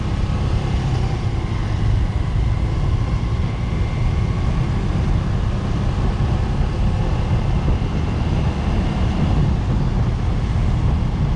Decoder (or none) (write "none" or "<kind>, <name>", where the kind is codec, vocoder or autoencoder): none